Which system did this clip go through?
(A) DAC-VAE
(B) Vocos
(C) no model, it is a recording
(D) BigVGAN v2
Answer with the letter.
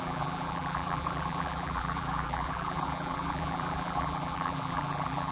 D